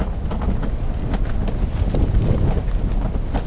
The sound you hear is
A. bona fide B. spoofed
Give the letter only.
A